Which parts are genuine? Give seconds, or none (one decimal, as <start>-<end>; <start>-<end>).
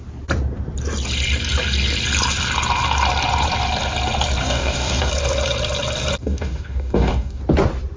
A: 0.0-4.4; 5.1-6.2; 7.4-8.0